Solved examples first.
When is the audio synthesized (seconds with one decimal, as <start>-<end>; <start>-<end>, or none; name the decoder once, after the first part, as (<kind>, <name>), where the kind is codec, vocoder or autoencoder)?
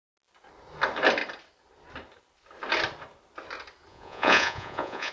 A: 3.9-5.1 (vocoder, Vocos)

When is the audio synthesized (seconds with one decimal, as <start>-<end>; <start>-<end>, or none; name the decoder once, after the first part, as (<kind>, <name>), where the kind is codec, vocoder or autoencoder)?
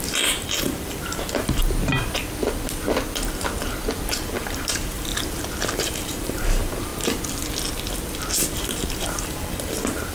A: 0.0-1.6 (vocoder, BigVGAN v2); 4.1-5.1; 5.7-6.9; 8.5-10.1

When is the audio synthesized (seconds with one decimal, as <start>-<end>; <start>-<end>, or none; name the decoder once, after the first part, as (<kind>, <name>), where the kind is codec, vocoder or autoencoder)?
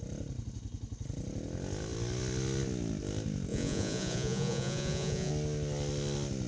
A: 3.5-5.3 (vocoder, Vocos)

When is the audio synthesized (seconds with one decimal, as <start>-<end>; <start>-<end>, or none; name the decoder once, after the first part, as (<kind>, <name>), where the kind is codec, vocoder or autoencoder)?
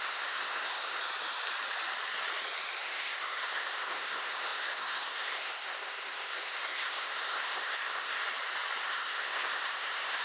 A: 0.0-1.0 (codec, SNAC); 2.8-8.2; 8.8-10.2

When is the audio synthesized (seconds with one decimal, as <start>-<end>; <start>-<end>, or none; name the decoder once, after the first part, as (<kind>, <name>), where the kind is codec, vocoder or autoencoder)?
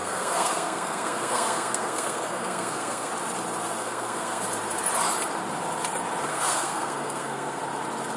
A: 0.0-3.1 (codec, SNAC); 3.8-4.4; 6.3-7.6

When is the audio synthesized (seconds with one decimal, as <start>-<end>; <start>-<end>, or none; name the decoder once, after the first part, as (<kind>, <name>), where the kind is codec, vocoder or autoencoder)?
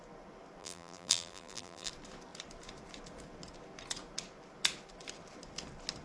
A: 0.6-1.9 (vocoder, BigVGAN v2)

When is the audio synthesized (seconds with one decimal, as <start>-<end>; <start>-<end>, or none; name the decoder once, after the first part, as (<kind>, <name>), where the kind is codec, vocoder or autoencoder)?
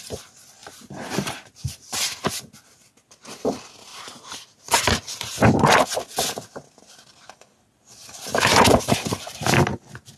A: 0.6-2.3 (vocoder, BigVGAN v2); 3.9-5.4; 8.7-9.5